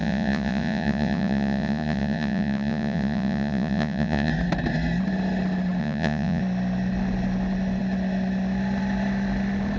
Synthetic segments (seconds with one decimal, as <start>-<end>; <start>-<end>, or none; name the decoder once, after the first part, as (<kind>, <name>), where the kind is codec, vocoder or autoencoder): 0.0-4.3 (vocoder, Vocos); 5.8-6.4